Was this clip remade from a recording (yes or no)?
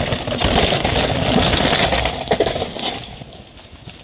no